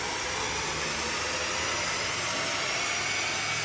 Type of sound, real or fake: real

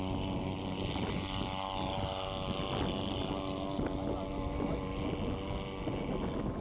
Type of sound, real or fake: real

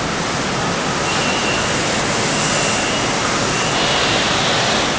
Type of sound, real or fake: real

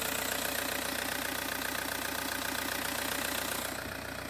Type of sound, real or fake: real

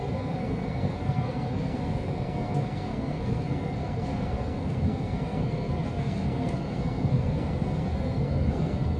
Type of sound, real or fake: fake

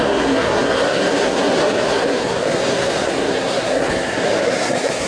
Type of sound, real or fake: fake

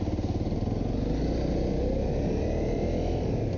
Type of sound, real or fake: real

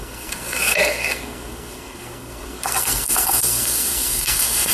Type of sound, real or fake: fake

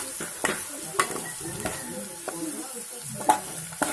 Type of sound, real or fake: real